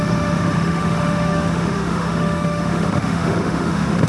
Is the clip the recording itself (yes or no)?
no